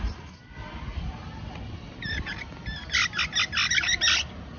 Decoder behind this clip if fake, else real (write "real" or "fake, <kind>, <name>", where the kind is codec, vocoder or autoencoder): real